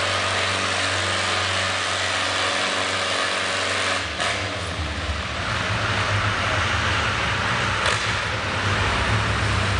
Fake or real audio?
real